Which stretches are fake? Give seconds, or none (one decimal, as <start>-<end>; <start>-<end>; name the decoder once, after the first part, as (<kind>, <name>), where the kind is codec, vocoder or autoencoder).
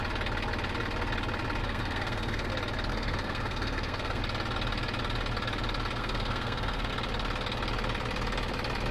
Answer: 1.6-2.5 (codec, SNAC); 2.9-4.2; 6.0-6.9